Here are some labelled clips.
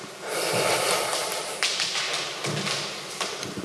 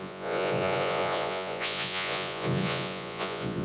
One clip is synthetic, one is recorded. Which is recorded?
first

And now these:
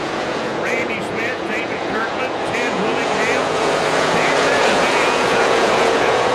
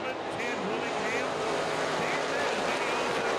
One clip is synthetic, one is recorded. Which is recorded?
second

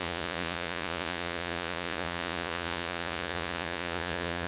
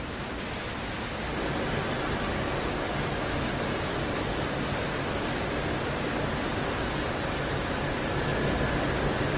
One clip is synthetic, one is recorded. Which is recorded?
second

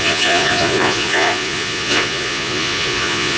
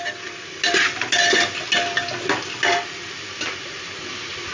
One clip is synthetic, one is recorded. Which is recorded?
second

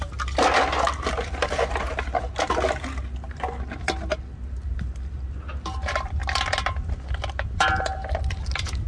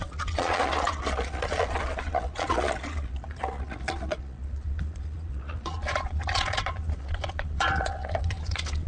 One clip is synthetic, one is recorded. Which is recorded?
first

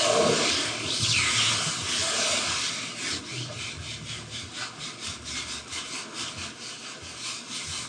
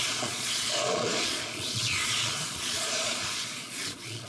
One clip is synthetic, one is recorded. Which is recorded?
first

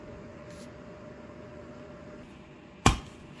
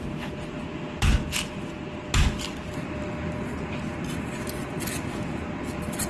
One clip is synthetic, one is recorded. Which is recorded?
second